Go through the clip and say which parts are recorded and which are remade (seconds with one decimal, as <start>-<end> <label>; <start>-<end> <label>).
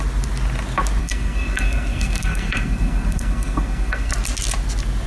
0.0-1.0 recorded; 1.0-4.1 remade; 4.1-5.1 recorded